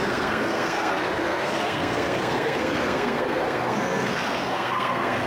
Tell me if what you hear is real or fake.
fake